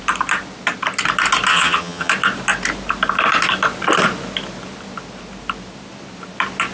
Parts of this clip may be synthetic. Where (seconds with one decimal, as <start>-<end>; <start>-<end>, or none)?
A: 1.5-2.1